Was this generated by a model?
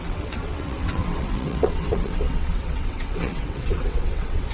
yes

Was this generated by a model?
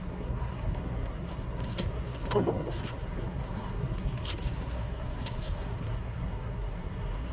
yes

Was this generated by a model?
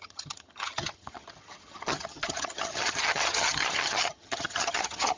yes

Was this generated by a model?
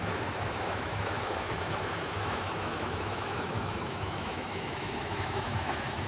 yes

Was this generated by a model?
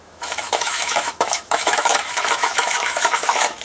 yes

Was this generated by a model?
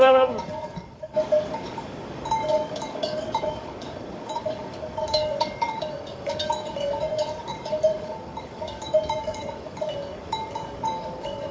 yes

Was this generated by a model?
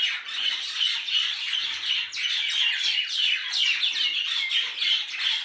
no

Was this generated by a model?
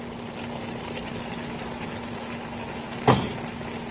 no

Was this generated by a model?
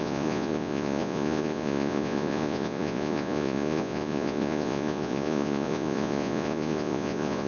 yes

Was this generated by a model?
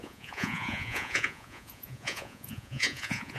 yes